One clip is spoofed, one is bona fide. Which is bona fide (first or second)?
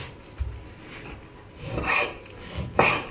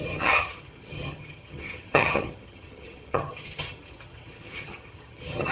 first